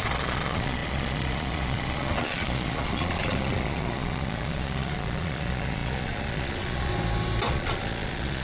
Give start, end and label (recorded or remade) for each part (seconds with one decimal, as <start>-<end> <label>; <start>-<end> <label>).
0.0-6.9 remade; 6.9-7.5 recorded; 7.5-8.4 remade

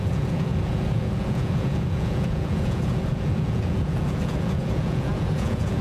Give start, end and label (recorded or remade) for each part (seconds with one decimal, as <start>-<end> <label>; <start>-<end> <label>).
0.0-5.8 remade

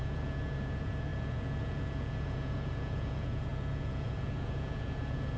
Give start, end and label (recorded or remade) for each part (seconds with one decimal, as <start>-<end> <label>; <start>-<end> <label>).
0.0-5.4 remade

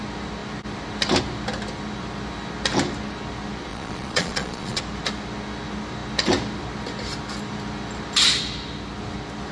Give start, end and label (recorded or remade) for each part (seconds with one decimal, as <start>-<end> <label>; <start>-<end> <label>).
0.0-3.7 recorded; 3.7-4.8 remade; 4.8-9.5 recorded

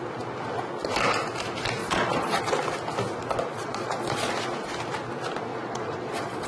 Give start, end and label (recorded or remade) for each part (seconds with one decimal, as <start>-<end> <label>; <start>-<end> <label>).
0.0-1.8 recorded; 1.8-2.4 remade; 2.4-3.5 recorded; 3.5-4.3 remade; 4.3-5.5 recorded; 5.5-6.5 remade

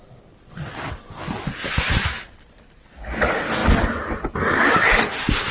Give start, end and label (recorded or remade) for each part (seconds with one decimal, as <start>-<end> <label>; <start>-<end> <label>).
0.0-5.5 recorded